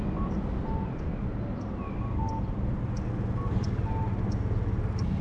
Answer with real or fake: real